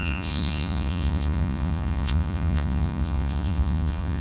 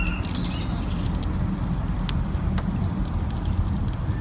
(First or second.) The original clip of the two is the second